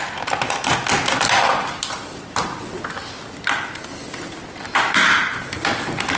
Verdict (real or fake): real